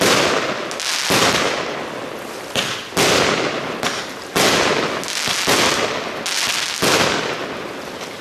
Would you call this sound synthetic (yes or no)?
no